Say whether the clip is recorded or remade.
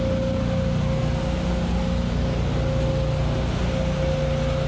recorded